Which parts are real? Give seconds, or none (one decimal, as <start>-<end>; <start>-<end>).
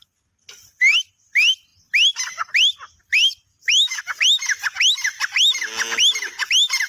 0.0-3.5; 4.0-6.9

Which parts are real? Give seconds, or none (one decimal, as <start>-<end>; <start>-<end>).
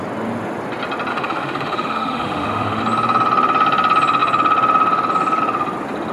0.0-1.1; 2.8-6.1